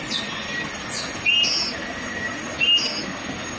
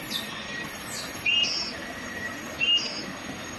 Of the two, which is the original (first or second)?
first